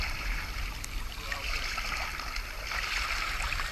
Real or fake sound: real